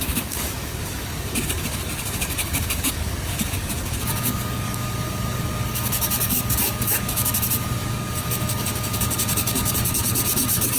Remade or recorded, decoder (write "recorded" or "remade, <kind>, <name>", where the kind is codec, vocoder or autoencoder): remade, codec, DAC